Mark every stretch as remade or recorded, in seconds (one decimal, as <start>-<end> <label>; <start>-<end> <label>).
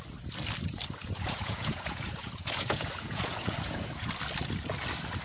0.0-1.0 recorded; 1.0-4.1 remade; 4.1-5.2 recorded